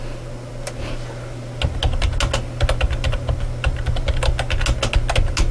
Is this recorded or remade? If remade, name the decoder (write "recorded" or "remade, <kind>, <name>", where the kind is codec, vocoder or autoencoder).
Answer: recorded